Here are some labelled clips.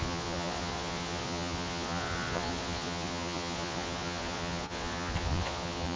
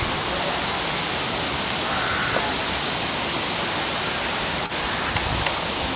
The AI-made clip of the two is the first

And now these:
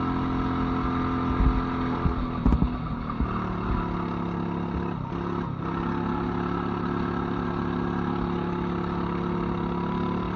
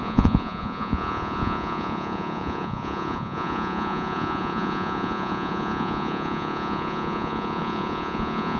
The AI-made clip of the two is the second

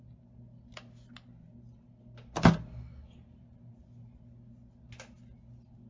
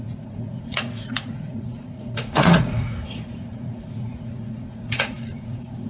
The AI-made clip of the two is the second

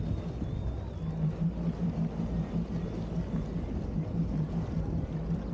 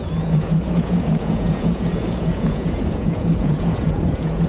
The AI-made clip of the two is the second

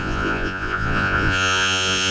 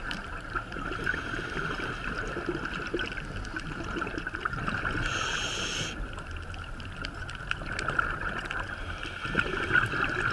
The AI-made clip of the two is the first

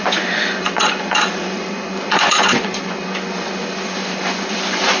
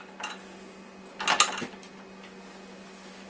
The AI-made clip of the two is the first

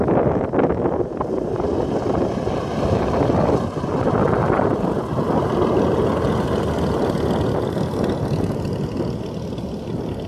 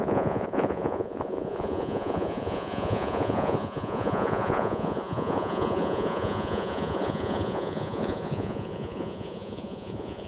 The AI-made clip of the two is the second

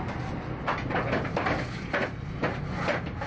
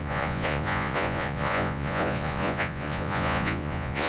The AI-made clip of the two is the second